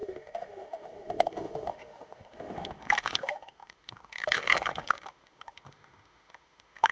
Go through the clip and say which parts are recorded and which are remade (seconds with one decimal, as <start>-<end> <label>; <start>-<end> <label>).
0.0-6.9 remade